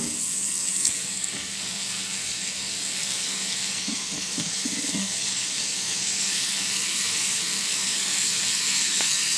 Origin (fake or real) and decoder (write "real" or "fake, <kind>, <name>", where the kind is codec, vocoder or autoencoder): fake, codec, SNAC